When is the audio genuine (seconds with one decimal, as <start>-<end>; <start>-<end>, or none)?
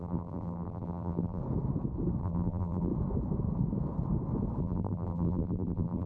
1.4-2.2; 2.9-4.6